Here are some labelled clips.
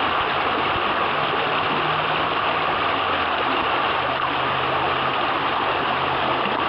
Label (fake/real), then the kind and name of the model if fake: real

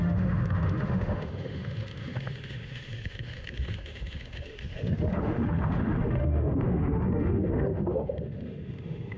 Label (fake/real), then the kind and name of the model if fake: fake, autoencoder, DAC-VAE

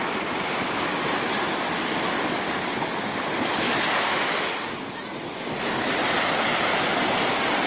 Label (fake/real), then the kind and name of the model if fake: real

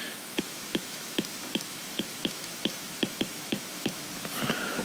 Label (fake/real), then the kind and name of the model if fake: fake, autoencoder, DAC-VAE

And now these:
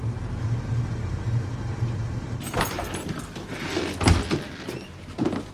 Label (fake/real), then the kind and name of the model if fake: real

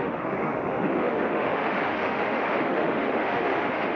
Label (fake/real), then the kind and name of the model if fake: fake, autoencoder, DAC-VAE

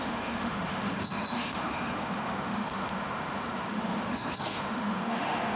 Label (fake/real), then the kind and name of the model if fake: fake, autoencoder, DAC-VAE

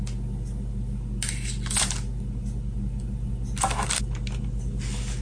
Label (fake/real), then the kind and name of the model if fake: real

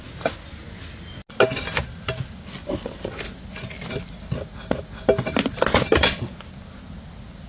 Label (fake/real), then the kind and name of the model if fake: real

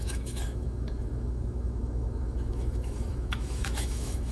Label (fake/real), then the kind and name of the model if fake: fake, autoencoder, DAC-VAE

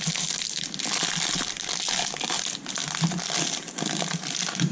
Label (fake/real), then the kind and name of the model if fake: real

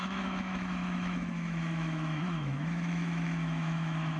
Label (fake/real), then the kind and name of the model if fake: fake, autoencoder, DAC-VAE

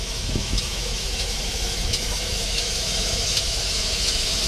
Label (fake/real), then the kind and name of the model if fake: fake, autoencoder, DAC-VAE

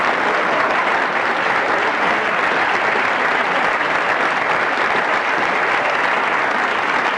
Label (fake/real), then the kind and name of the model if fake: real